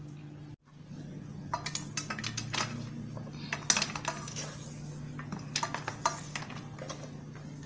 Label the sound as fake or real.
real